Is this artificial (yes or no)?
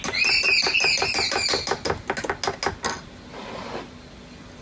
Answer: no